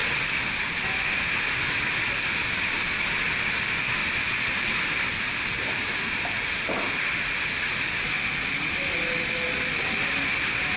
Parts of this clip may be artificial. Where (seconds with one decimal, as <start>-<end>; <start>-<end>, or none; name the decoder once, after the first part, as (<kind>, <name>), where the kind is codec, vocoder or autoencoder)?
2.4-3.0 (vocoder, BigVGAN v2); 4.0-7.1